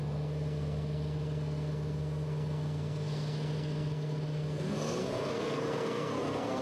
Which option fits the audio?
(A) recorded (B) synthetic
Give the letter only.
B